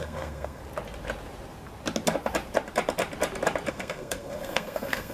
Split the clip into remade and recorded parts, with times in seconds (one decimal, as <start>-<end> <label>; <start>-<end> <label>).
0.0-0.6 remade; 0.6-3.7 recorded; 3.7-5.1 remade